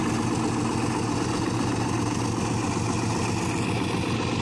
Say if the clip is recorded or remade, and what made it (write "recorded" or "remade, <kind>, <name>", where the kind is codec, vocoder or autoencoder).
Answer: recorded